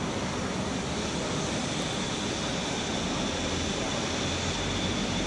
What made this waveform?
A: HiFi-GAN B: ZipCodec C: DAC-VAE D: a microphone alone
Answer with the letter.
D